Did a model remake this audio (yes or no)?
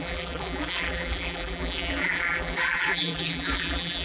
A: yes